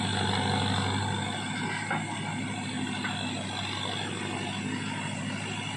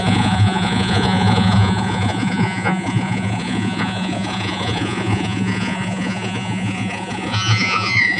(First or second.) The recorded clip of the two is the first